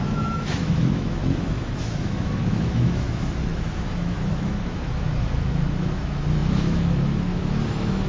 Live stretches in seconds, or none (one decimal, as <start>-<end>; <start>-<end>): none